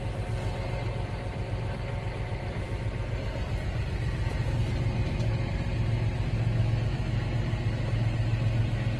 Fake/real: real